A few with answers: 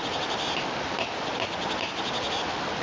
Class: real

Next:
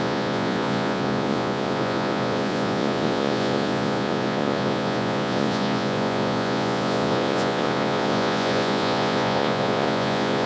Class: fake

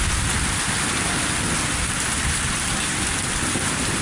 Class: real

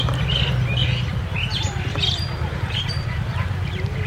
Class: fake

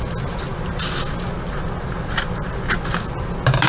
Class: real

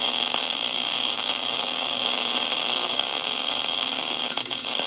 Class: fake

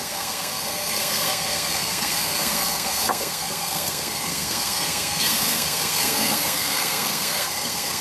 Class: fake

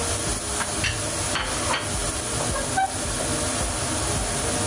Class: real